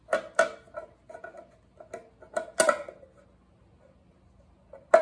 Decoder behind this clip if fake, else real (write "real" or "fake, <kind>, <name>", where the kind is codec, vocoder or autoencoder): real